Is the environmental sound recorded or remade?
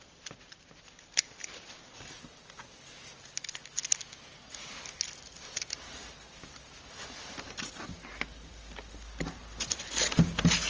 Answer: recorded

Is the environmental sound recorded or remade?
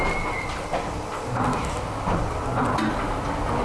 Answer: recorded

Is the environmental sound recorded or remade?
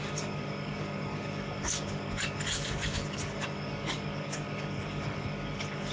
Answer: remade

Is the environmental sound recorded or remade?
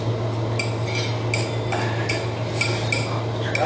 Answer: recorded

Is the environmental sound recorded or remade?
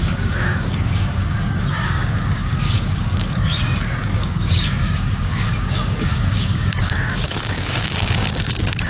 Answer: remade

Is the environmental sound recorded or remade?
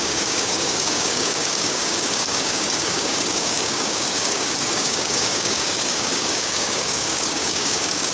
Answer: remade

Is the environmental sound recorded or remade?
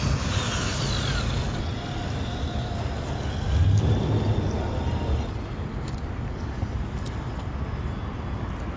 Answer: recorded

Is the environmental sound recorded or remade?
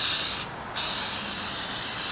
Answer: recorded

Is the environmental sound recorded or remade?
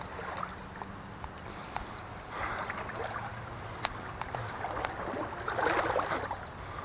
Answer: recorded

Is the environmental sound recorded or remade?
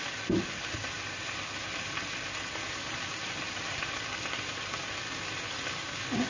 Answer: recorded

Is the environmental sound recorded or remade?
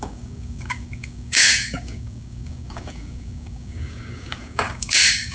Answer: remade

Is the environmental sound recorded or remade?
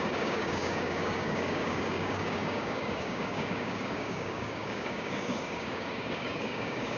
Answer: remade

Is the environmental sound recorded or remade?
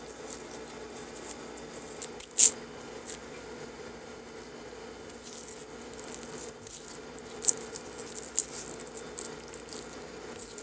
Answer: recorded